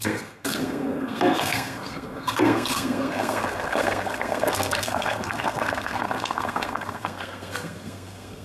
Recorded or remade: remade